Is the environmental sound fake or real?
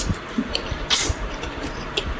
fake